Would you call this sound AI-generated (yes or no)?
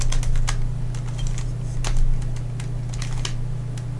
no